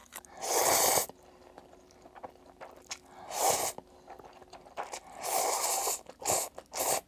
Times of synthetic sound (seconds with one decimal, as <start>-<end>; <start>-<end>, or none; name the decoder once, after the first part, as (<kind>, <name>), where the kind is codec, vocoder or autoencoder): none